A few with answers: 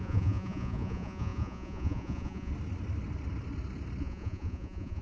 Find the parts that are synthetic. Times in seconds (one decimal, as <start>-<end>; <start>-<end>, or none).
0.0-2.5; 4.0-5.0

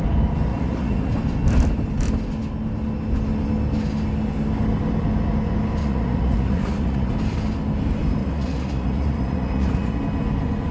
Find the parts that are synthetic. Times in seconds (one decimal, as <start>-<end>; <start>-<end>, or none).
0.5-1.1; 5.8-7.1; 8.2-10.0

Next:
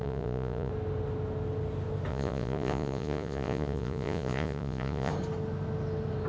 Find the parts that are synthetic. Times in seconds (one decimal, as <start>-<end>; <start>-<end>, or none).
0.0-0.7; 2.1-5.1

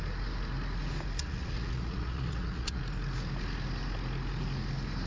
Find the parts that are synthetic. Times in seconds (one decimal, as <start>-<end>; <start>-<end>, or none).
1.2-2.8

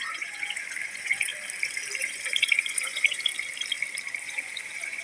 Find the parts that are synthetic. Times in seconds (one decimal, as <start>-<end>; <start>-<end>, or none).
0.0-1.3; 2.0-3.3; 4.2-5.0